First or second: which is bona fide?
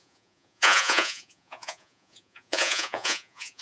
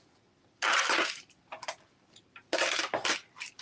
second